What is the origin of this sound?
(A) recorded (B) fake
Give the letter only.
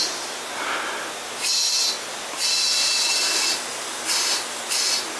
A